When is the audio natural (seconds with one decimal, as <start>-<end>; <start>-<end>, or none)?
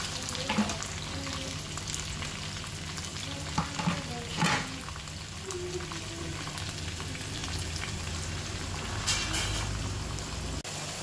0.0-4.3; 4.8-11.0